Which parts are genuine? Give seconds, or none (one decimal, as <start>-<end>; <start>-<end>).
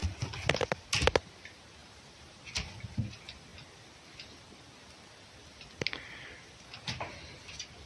0.0-1.8; 2.7-7.9